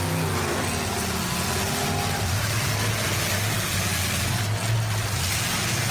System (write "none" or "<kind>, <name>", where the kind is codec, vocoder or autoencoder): none